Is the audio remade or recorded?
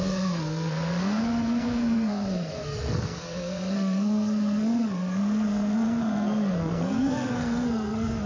remade